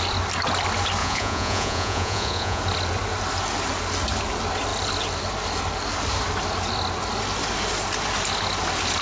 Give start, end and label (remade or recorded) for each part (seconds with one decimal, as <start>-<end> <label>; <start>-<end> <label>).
0.0-1.0 recorded; 1.0-2.6 remade; 2.6-9.0 recorded